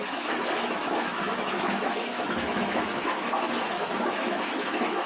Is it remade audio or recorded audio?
remade